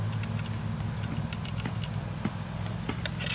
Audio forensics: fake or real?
real